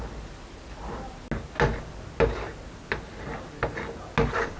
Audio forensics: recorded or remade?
recorded